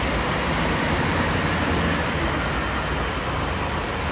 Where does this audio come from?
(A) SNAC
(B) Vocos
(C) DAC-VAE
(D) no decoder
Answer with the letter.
D